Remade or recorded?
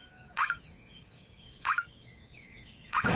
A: remade